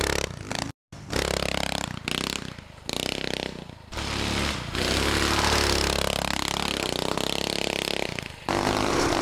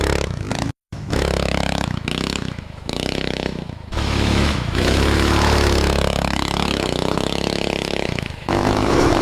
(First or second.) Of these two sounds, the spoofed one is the second